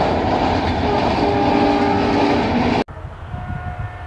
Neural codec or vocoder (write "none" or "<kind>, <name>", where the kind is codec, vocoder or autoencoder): none